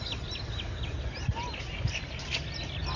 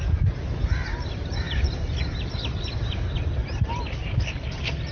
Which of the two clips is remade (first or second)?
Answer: second